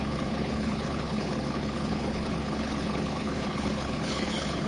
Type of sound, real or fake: fake